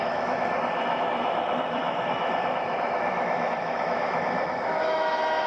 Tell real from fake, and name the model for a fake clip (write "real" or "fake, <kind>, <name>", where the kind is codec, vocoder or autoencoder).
fake, autoencoder, DAC-VAE